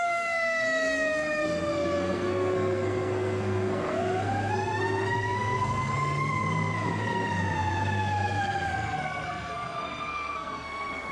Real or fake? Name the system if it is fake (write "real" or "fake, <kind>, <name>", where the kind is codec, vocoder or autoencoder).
fake, codec, SNAC